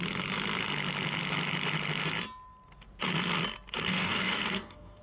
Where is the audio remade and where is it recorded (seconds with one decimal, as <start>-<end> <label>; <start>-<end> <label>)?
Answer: 0.0-3.9 recorded; 3.9-5.0 remade